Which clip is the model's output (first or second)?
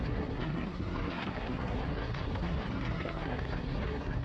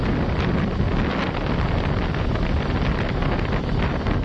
first